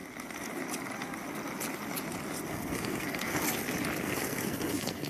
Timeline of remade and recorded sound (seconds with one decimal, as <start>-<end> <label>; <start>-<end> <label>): 0.0-2.5 recorded; 2.5-3.4 remade; 3.4-4.0 recorded; 4.0-5.1 remade